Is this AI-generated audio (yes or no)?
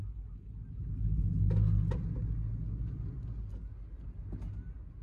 no